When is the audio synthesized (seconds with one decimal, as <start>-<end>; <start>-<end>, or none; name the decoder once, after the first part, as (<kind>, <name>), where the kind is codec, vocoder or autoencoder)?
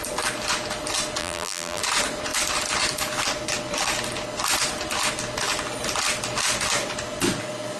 1.2-1.8 (vocoder, BigVGAN v2)